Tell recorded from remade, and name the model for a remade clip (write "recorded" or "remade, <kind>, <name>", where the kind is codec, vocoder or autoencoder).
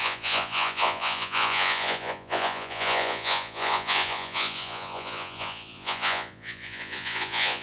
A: remade, vocoder, Vocos